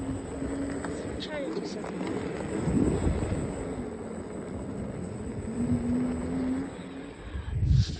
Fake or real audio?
real